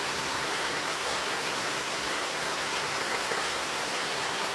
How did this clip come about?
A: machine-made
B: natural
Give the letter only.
A